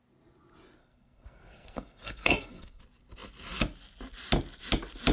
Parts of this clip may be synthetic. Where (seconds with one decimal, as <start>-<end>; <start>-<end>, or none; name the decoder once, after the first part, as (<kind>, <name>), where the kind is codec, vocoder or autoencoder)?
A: 0.8-2.8 (codec, SNAC)